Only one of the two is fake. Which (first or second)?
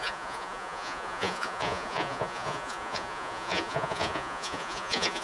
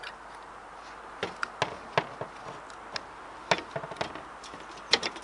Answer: first